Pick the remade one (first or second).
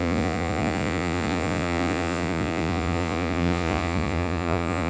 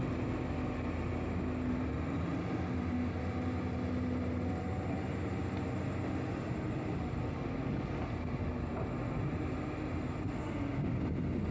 first